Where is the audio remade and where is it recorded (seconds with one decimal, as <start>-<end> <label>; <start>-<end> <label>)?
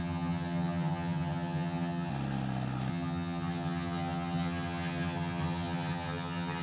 0.0-2.1 remade; 2.1-2.9 recorded; 2.9-6.6 remade